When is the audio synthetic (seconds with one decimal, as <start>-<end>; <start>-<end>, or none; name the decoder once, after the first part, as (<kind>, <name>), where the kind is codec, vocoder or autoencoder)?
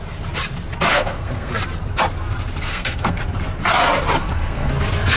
0.9-1.5 (codec, SNAC); 2.7-3.2; 4.2-4.7